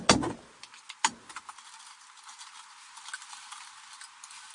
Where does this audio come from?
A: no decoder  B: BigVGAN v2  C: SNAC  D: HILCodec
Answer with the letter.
A